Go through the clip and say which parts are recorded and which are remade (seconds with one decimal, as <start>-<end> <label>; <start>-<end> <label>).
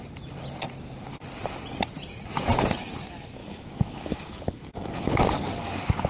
0.0-3.4 recorded; 3.4-5.2 remade; 5.2-6.1 recorded